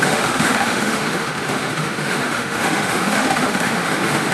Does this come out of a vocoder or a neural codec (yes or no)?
yes